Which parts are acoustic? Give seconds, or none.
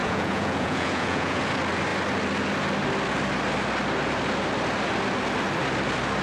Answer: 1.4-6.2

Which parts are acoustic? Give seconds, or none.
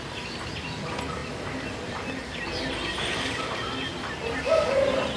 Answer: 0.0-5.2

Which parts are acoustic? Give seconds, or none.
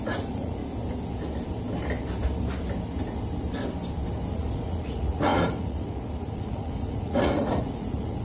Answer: 0.6-4.3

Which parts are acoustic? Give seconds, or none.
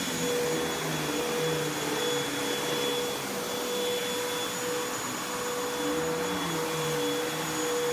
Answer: 0.0-7.9